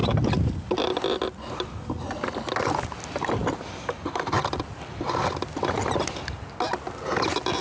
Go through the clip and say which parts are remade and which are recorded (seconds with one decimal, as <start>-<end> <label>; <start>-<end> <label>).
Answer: 0.0-3.4 recorded; 3.4-5.6 remade; 5.6-7.6 recorded